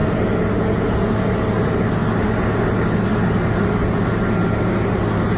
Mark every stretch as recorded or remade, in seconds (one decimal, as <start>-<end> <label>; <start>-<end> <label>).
0.0-5.4 recorded